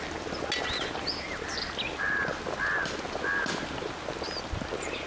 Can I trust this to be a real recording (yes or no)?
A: yes